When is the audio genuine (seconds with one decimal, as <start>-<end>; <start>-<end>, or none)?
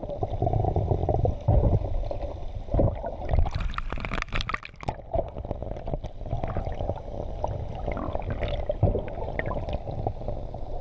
0.0-10.8